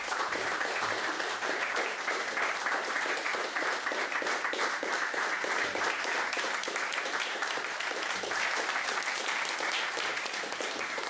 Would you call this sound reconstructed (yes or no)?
yes